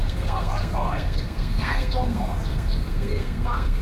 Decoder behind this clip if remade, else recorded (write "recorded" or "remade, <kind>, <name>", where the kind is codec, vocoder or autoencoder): remade, codec, SNAC